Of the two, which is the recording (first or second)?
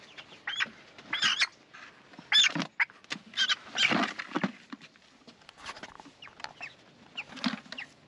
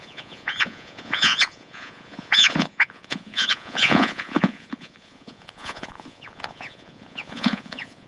first